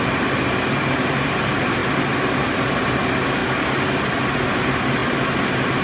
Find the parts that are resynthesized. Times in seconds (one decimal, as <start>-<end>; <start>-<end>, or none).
none